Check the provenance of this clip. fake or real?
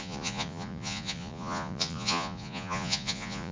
fake